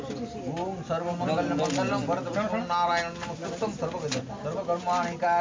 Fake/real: real